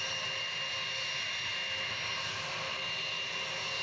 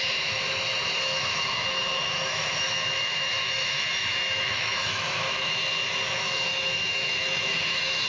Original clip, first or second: first